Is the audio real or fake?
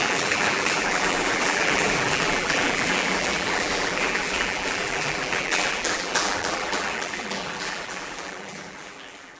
fake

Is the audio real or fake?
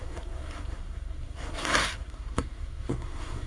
fake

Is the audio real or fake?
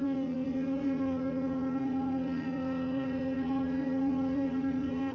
fake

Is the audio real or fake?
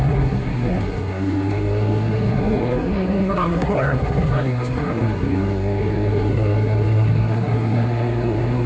fake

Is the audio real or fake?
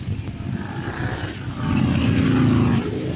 real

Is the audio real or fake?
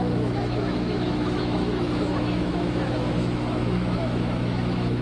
fake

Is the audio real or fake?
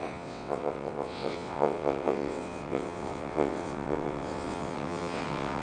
fake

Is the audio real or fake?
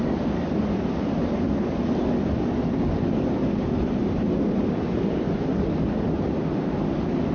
real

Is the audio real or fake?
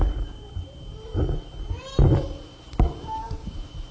fake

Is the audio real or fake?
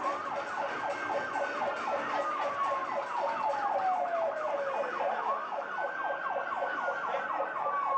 real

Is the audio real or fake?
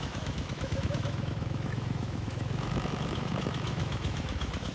fake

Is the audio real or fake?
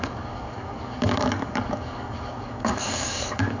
fake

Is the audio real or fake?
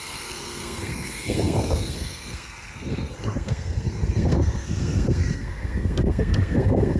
fake